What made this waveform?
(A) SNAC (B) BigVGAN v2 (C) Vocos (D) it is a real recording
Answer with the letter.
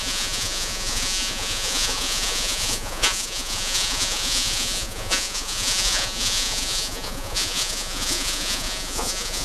C